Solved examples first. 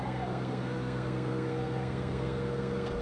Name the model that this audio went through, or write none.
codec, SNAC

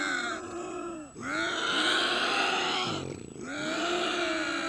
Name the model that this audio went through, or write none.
none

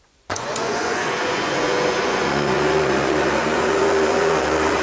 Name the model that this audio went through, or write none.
vocoder, Vocos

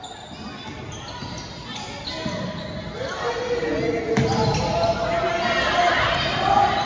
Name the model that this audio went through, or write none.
none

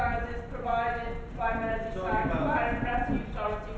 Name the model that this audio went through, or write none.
none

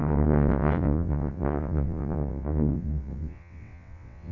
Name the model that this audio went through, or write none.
vocoder, WaveNeXt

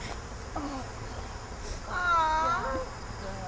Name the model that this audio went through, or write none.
none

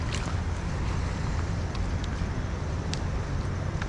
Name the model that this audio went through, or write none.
none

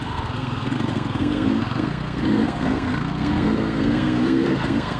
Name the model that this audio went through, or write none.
codec, SNAC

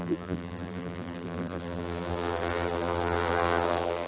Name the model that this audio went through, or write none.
vocoder, BigVGAN v2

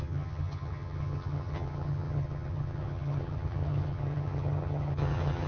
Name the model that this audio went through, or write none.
vocoder, HiFi-GAN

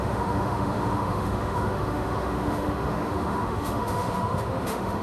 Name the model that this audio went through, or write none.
autoencoder, DAC-VAE